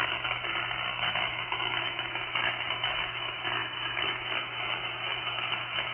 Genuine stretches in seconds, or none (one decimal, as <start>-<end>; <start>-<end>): 0.0-1.1